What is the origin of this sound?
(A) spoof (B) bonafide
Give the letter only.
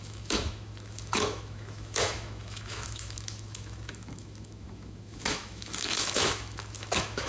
A